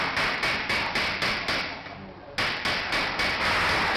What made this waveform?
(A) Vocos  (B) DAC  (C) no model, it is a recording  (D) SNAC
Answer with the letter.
C